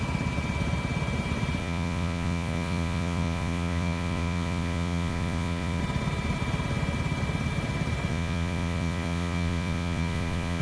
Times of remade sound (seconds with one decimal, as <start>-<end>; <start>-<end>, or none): 1.6-5.8; 8.1-10.6